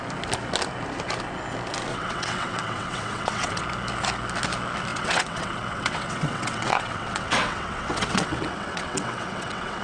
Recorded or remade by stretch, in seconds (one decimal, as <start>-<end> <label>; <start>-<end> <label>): 0.0-1.9 recorded; 1.9-3.6 remade; 3.6-4.9 recorded; 4.9-9.8 remade